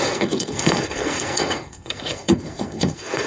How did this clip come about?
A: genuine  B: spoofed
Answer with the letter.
B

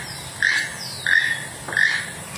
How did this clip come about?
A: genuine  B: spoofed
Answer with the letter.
A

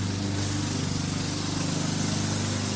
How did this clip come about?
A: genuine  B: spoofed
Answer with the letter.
A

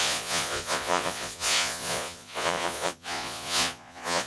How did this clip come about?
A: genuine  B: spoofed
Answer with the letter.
B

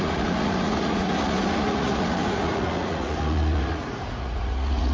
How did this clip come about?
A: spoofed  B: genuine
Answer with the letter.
A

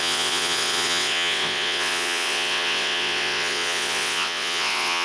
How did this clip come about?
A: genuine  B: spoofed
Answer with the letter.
B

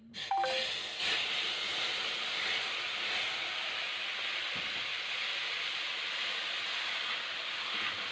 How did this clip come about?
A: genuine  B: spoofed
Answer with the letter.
A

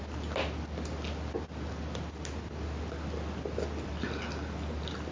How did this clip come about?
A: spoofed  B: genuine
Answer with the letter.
B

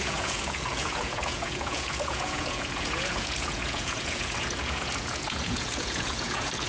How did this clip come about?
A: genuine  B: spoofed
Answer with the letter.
B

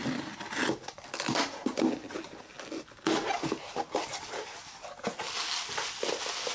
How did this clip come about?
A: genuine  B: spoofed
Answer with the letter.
A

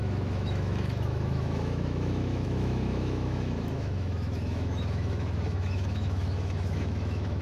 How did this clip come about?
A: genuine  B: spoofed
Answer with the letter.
B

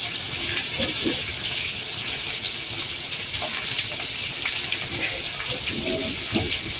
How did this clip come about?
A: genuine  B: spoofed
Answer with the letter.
A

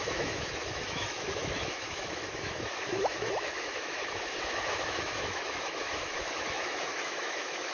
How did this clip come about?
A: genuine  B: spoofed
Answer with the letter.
B